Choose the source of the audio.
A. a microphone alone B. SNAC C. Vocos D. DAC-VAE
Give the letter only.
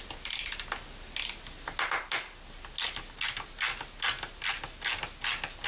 A